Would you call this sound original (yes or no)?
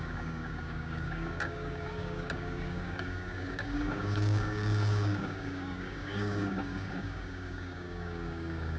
no